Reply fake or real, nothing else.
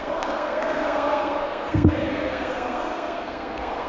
fake